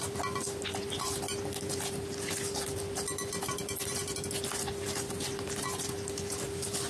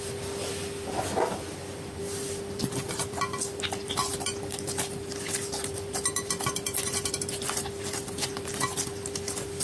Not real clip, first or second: second